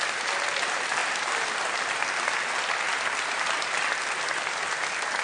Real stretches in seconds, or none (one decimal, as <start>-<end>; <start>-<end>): 0.0-5.2